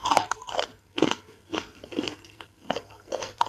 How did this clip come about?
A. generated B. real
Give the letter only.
A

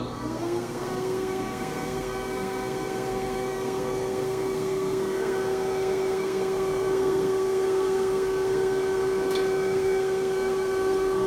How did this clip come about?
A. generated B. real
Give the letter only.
A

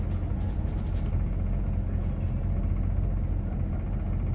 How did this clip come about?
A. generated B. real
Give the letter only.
B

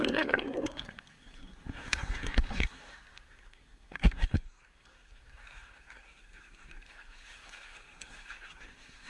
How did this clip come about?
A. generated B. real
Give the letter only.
A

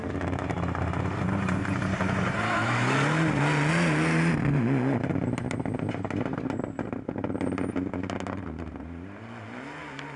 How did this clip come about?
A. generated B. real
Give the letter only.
B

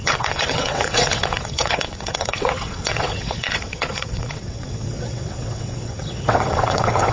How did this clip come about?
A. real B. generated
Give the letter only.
B